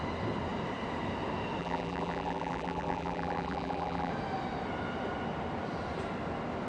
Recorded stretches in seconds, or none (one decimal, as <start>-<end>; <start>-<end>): 0.0-1.6; 4.1-6.7

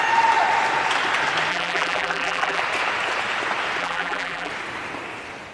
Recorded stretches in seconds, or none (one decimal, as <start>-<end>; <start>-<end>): 0.0-1.5; 2.6-3.8; 4.5-5.5

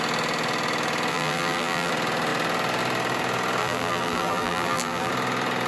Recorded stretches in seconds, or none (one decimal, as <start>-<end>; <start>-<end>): 0.0-1.1; 1.9-3.6; 5.1-5.7